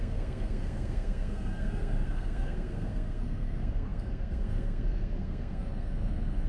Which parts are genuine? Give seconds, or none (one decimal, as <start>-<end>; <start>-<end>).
none